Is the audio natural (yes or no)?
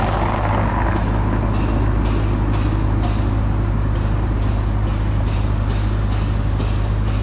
yes